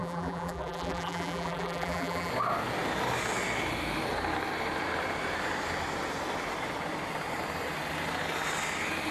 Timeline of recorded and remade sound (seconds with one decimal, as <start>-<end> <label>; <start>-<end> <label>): 0.0-2.3 remade; 2.3-9.1 recorded